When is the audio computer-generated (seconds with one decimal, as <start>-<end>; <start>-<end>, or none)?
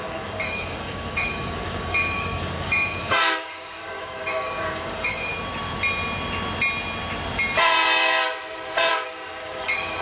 0.0-5.3; 8.9-10.0